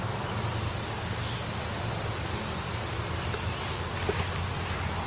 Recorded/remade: recorded